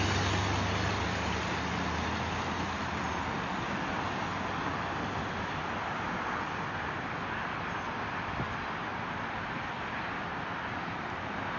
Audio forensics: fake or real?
real